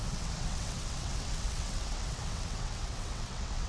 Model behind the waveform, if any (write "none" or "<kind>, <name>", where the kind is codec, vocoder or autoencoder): vocoder, WaveNeXt